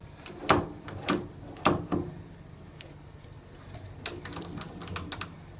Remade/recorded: recorded